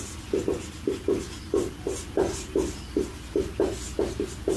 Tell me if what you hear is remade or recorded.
recorded